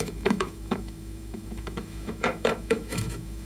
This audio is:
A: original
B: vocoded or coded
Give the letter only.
B